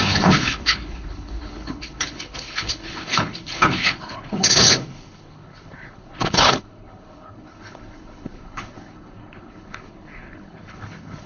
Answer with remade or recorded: remade